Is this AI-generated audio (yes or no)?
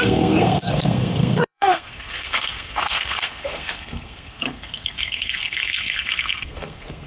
yes